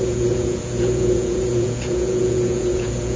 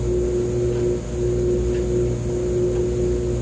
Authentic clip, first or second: second